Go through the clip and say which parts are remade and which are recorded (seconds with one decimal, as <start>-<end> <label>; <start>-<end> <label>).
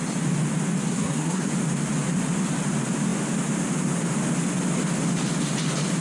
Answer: 0.0-0.9 recorded; 0.9-1.5 remade; 1.5-6.0 recorded